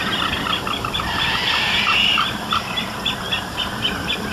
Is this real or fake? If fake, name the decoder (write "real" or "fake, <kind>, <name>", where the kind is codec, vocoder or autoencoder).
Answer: real